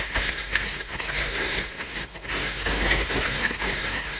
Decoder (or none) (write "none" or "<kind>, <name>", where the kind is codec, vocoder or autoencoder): codec, SNAC